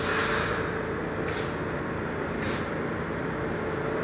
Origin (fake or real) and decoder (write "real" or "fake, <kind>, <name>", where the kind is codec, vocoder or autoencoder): real